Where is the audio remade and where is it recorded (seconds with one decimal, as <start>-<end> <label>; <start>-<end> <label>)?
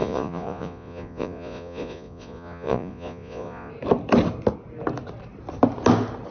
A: 0.0-3.7 remade; 3.7-6.3 recorded